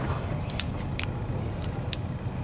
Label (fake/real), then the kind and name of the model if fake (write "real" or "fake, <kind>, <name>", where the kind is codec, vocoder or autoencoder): real